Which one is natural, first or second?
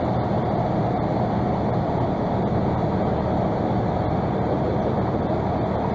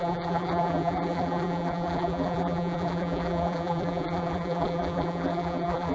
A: first